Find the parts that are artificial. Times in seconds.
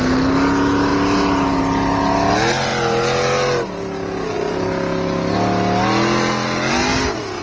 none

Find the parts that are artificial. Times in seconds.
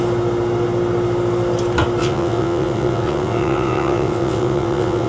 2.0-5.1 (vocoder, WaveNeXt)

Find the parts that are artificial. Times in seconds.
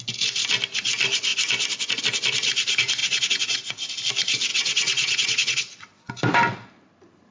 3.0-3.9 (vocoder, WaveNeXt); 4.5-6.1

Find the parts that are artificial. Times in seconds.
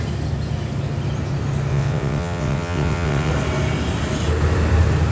1.7-3.3 (vocoder, WaveNeXt)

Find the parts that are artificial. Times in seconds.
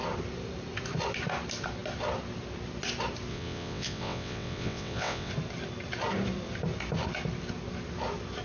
3.3-5.3 (vocoder, WaveNeXt)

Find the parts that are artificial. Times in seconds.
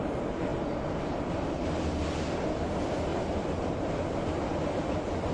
none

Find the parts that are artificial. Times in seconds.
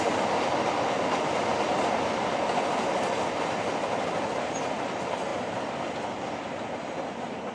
none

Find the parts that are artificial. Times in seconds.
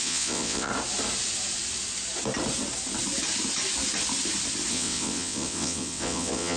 0.0-0.7 (vocoder, WaveNeXt); 4.7-6.6